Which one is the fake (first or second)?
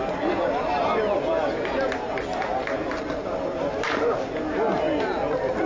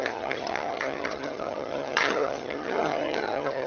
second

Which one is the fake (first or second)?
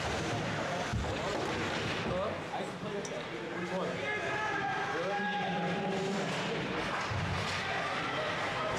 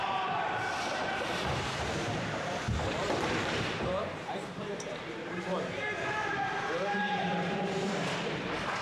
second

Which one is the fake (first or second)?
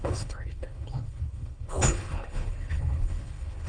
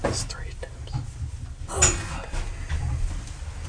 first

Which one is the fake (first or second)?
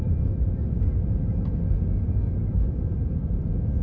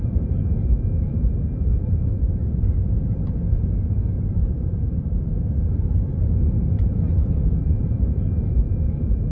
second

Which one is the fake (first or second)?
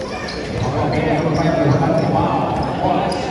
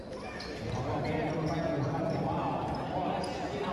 first